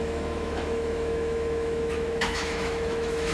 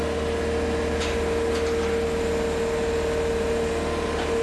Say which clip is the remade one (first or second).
first